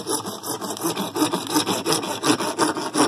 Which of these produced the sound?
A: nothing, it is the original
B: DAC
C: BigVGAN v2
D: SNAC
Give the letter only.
A